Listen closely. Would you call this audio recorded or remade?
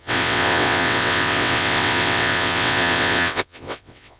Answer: remade